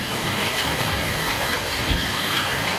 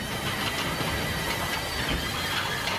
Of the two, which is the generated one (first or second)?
first